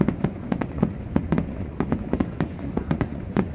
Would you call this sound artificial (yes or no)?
yes